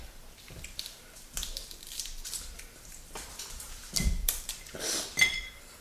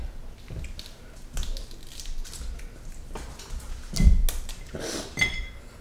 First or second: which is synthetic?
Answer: first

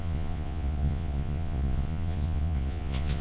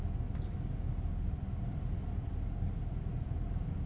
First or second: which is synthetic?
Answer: first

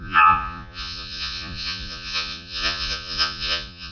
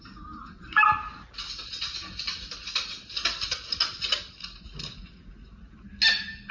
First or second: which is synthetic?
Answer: first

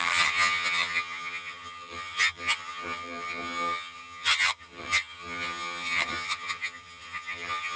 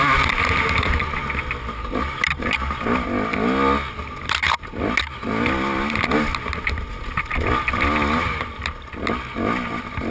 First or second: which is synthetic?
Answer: first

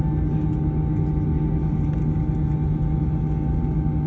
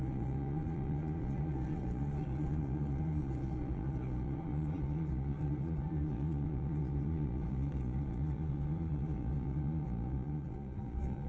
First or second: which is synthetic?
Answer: second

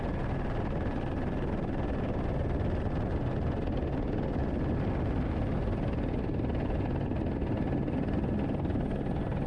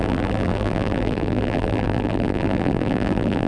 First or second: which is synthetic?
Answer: second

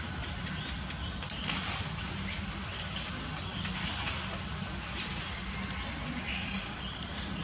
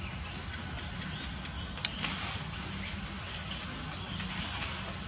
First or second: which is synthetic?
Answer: first